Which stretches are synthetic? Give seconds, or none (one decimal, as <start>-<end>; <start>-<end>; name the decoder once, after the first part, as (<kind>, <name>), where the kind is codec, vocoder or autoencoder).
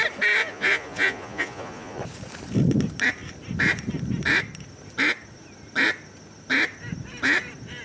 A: 0.4-2.0 (vocoder, Vocos)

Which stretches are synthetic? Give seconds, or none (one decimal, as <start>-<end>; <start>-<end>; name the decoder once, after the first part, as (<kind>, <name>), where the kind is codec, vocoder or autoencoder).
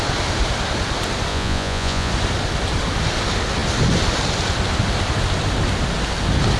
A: 1.3-2.1 (vocoder, Vocos)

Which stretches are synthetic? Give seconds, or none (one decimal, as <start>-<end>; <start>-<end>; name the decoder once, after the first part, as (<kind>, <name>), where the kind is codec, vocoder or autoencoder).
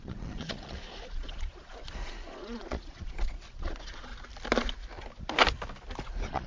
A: 0.0-4.1 (vocoder, Vocos); 6.1-6.5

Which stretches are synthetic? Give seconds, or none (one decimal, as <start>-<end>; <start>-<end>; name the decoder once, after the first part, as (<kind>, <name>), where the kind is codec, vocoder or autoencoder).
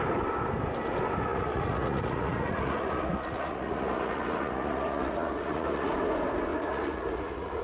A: 1.3-5.9 (vocoder, Vocos); 6.5-7.6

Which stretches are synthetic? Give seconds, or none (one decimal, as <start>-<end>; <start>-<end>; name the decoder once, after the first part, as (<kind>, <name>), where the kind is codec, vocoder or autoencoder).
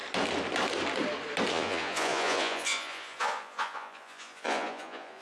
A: 1.5-5.2 (vocoder, Vocos)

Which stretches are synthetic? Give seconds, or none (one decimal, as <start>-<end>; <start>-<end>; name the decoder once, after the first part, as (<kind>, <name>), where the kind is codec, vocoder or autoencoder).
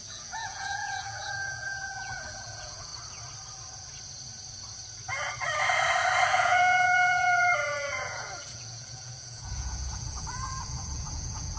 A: 0.0-2.9 (vocoder, Vocos); 6.3-11.6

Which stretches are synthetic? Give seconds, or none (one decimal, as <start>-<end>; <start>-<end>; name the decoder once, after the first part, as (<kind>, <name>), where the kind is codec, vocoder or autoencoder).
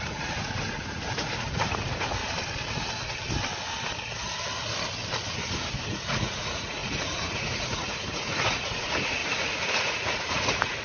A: 0.0-2.2 (vocoder, Vocos); 5.3-10.8